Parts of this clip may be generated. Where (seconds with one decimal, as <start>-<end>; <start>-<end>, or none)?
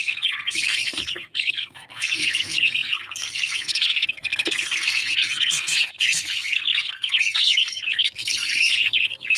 0.0-9.4